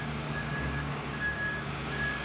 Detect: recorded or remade remade